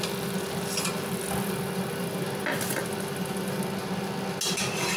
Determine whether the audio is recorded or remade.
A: recorded